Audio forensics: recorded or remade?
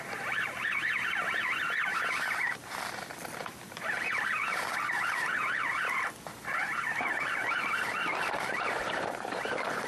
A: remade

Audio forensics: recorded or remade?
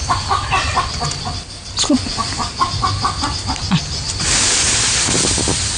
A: recorded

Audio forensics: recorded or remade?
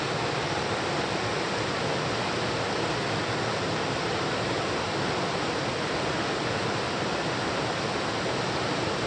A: recorded